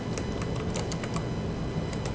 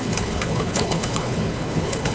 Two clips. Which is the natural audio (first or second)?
first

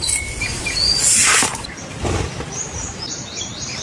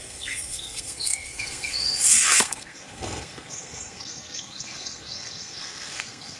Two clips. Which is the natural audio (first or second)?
first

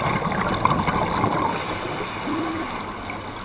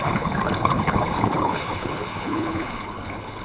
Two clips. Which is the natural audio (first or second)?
first